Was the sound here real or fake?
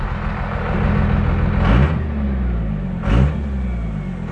real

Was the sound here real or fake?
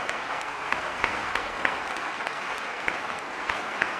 fake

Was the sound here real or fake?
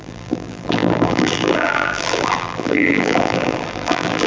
fake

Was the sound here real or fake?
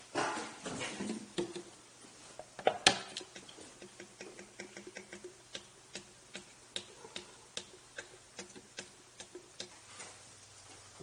real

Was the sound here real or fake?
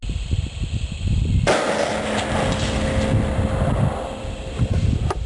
real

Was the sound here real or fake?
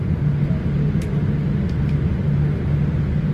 real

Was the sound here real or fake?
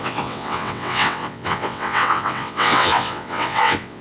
fake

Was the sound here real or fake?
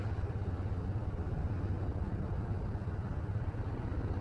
fake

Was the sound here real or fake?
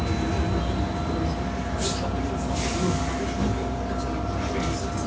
real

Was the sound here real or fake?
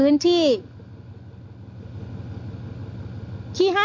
real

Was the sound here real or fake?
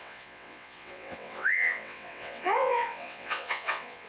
fake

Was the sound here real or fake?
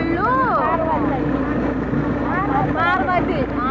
real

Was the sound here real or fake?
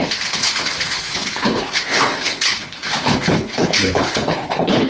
fake